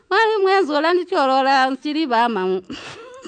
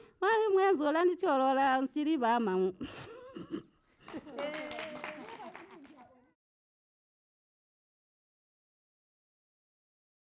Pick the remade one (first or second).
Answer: first